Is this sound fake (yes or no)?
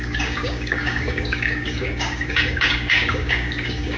yes